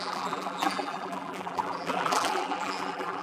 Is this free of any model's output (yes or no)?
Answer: no